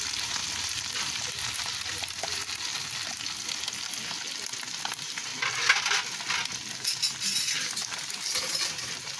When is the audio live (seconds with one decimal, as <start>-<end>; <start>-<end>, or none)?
0.4-1.3; 2.7-4.8; 5.3-7.5